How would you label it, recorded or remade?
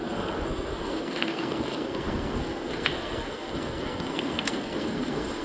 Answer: remade